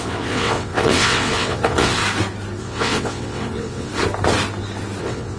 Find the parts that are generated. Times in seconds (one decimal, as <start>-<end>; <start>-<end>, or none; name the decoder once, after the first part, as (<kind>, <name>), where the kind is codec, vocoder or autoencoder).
0.0-2.0 (vocoder, WaveNeXt); 2.6-3.9; 5.0-5.4

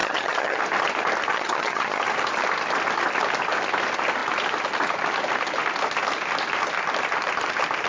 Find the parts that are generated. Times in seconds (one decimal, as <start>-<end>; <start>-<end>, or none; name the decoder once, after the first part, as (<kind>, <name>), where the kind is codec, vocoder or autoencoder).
0.0-0.6 (vocoder, HiFi-GAN); 1.3-2.0

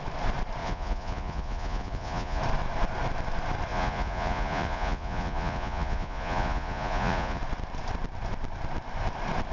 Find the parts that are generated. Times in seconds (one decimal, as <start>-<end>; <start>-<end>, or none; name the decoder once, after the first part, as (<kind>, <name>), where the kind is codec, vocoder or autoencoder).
0.6-2.4 (vocoder, Vocos); 3.7-7.4

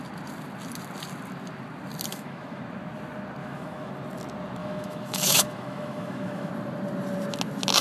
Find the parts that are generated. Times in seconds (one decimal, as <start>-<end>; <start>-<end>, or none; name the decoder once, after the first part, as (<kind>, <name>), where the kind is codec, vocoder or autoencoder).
2.1-2.6 (autoencoder, DAC-VAE); 3.4-3.9; 4.6-6.5

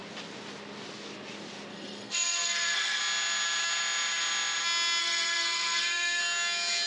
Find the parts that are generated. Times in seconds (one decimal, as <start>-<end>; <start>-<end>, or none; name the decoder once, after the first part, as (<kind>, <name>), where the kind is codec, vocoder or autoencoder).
1.7-3.0 (codec, SNAC); 5.0-6.2